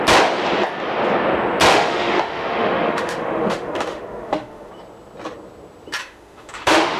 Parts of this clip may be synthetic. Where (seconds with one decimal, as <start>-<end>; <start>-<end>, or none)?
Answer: 1.7-4.7; 6.0-7.0